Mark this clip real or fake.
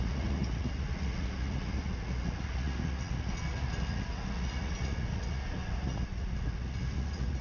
fake